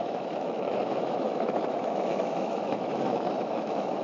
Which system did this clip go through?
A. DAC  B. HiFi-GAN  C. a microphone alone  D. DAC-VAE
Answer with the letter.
D